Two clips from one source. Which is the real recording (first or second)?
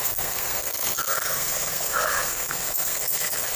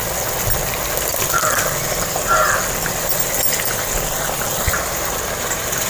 second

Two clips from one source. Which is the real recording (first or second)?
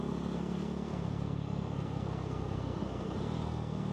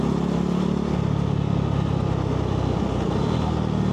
second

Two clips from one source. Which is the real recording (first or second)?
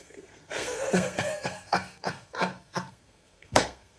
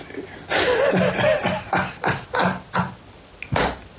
second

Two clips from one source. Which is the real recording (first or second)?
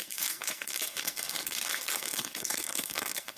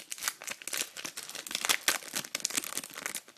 second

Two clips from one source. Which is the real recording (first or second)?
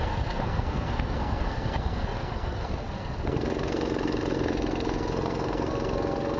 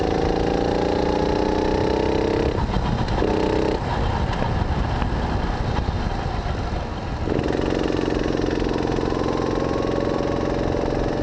second